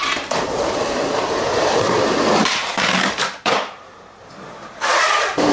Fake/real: fake